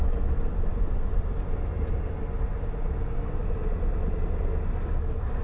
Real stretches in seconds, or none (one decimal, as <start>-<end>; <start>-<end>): 0.0-5.4